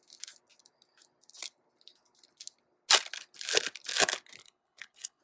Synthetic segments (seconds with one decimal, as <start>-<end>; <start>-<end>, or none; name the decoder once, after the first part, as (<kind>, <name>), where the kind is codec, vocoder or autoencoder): 4.4-5.2 (codec, HILCodec)